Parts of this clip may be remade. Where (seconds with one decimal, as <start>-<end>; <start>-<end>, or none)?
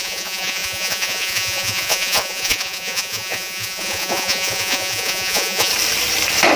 0.0-5.7